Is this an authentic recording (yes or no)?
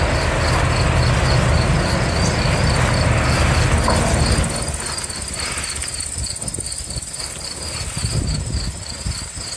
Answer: yes